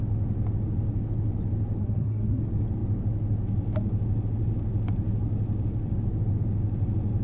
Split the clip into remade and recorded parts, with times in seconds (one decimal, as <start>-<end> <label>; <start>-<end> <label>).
0.0-1.8 recorded; 1.8-2.4 remade; 2.4-7.2 recorded